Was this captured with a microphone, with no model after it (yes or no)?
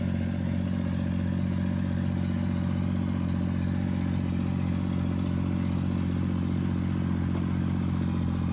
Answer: yes